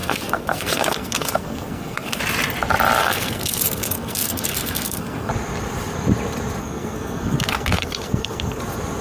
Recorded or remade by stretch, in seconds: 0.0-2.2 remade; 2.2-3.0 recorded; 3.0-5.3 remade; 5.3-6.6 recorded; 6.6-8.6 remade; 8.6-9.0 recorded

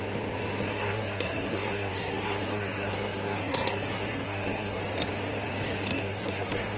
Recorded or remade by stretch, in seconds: 0.0-0.7 recorded; 0.7-4.8 remade; 4.8-5.9 recorded; 5.9-6.8 remade